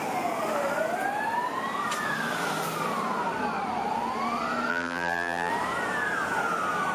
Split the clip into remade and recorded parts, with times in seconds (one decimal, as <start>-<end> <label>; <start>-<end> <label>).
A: 0.0-4.7 recorded; 4.7-5.5 remade; 5.5-6.9 recorded